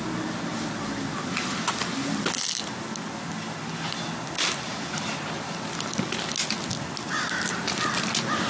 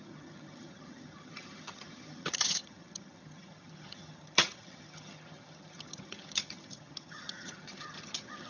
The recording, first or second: first